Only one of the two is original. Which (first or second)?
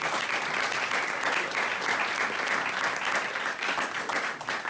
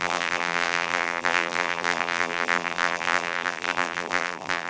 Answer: first